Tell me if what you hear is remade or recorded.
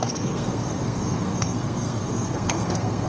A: remade